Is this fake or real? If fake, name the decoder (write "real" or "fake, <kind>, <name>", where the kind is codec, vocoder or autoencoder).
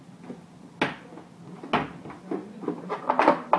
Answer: real